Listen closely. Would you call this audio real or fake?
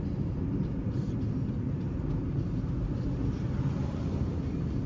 real